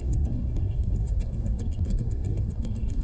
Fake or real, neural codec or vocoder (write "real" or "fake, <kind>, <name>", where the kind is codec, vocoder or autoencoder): fake, codec, SNAC